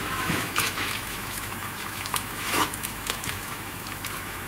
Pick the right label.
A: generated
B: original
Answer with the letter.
A